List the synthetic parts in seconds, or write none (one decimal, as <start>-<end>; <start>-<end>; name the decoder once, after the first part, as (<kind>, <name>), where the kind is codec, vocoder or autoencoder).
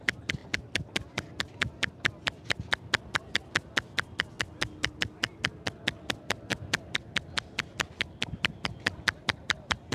none